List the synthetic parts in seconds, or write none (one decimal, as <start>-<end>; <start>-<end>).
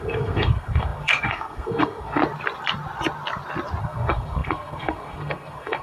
0.0-2.2; 3.8-5.8